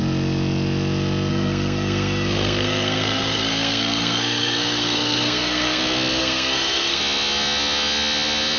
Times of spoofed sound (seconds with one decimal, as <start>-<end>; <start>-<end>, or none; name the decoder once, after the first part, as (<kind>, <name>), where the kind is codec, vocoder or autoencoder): 1.3-5.8 (codec, SNAC); 6.2-7.0